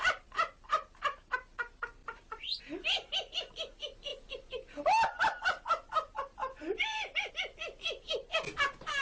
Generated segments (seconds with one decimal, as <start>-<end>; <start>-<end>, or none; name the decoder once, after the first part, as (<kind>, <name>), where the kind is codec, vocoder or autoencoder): 2.0-2.6 (vocoder, BigVGAN v2); 4.1-7.3